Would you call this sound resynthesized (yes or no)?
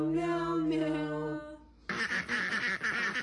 no